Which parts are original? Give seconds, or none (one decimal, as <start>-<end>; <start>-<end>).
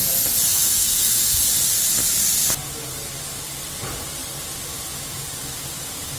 0.0-0.5; 1.4-6.2